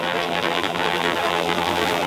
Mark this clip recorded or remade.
remade